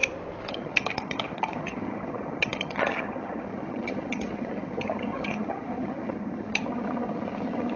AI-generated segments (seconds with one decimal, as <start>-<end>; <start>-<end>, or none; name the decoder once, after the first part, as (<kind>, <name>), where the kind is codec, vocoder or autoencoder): 0.5-7.8 (vocoder, HiFi-GAN)